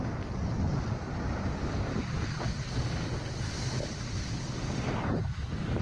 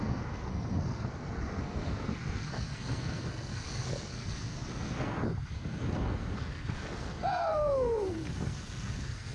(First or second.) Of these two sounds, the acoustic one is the first